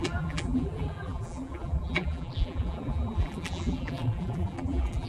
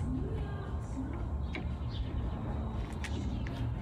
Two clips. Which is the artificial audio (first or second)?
first